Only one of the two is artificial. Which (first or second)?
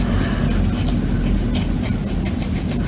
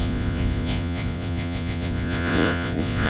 second